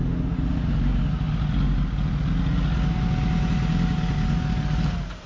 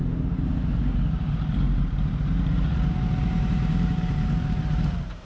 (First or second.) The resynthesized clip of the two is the second